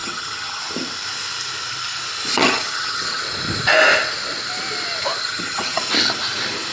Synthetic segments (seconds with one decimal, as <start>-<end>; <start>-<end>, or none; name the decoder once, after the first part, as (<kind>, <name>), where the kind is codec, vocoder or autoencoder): 0.0-0.6 (vocoder, HiFi-GAN); 2.3-3.2; 5.2-5.8